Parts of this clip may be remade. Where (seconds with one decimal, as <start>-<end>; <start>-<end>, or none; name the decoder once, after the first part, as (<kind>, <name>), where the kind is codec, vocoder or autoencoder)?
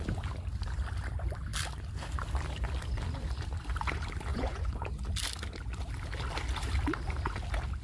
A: 4.3-4.9 (vocoder, Vocos)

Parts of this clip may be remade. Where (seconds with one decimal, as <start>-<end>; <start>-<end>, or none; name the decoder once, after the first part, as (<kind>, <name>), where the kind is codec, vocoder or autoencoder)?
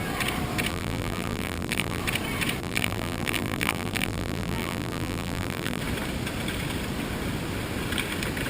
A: 0.7-2.0 (vocoder, BigVGAN v2); 2.6-5.8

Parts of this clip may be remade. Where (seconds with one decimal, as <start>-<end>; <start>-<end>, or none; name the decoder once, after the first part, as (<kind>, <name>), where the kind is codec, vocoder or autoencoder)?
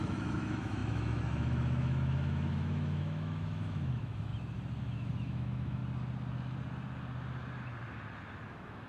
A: 0.0-4.3 (autoencoder, DAC-VAE); 4.8-5.8; 8.5-8.9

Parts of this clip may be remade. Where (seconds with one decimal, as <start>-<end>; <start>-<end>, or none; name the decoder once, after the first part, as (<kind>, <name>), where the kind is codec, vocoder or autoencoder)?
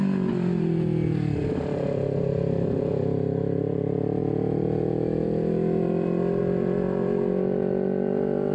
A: none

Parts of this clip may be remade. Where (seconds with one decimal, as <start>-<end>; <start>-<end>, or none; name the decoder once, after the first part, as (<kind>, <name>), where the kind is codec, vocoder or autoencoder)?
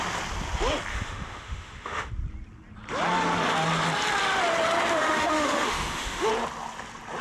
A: 0.9-2.1 (autoencoder, DAC-VAE); 4.9-6.3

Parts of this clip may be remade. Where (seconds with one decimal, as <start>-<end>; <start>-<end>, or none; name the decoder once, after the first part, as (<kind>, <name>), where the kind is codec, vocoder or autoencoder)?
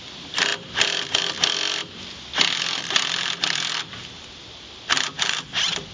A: none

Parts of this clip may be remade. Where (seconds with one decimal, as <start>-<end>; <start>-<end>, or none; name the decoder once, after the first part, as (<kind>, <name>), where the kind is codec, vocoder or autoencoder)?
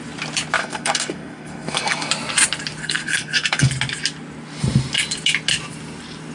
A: 0.6-2.1 (codec, SNAC); 2.8-3.7